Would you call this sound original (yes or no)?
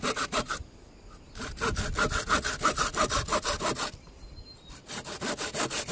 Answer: yes